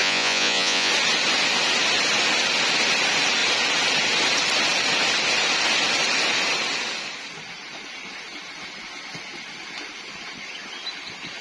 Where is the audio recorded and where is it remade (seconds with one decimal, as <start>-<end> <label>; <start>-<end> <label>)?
0.0-0.9 remade; 0.9-11.4 recorded